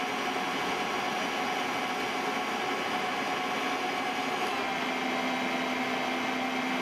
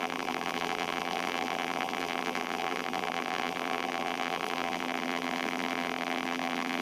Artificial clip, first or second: second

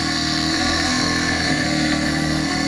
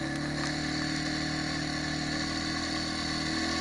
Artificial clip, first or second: first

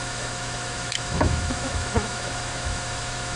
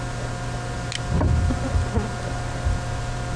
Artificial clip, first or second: first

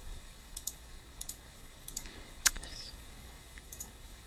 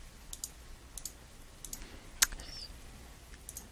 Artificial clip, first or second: first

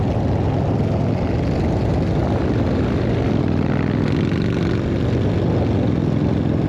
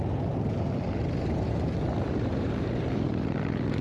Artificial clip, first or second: second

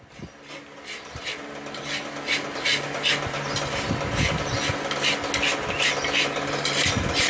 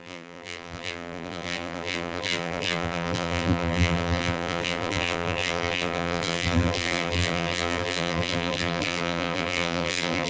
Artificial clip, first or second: second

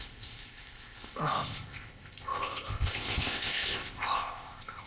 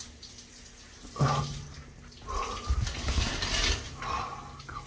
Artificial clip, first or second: first